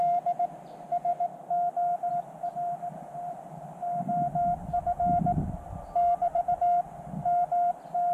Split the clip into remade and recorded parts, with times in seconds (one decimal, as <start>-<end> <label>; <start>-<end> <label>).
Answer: 0.0-1.1 remade; 1.1-2.1 recorded; 2.1-8.1 remade